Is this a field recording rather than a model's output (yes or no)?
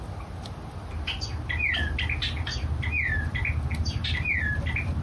yes